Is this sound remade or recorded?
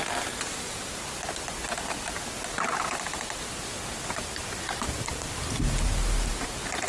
recorded